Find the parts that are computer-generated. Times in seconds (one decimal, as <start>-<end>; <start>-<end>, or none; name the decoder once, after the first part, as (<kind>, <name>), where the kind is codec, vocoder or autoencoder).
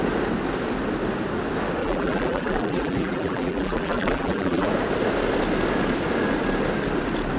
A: 1.8-4.7 (vocoder, BigVGAN v2)